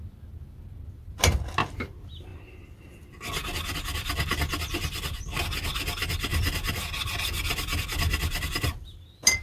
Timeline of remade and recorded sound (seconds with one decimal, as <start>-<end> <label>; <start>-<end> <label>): 0.0-9.4 recorded

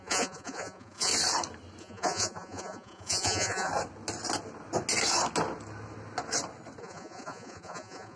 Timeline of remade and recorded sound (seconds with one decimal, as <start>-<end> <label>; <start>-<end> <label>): 0.0-1.1 remade; 1.1-1.8 recorded; 1.8-3.7 remade; 3.7-6.8 recorded; 6.8-8.2 remade

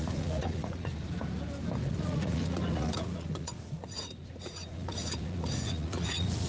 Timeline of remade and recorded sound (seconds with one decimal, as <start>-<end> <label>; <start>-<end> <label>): 0.0-0.9 remade; 0.9-1.8 recorded; 1.8-6.5 remade

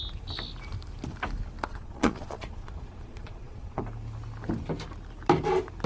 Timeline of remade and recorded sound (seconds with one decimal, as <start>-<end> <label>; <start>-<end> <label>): 0.0-1.7 recorded; 1.7-3.8 remade; 3.8-5.9 recorded

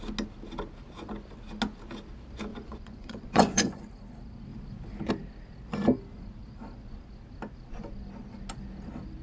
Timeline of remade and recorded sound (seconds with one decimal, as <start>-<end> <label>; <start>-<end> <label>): 0.0-2.5 recorded; 2.5-3.8 remade; 3.8-9.2 recorded